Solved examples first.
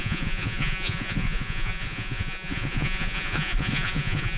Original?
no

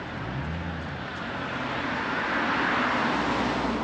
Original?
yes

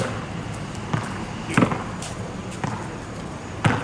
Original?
yes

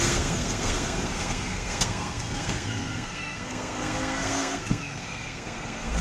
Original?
no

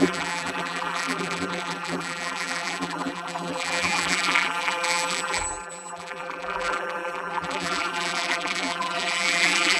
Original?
no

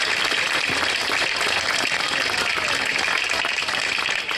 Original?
yes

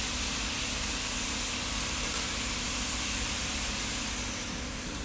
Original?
yes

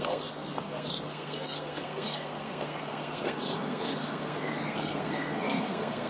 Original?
no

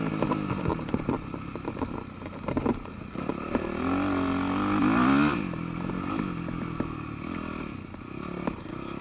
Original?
yes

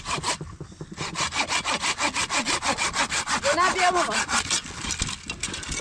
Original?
yes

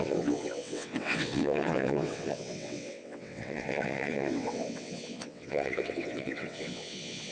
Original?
no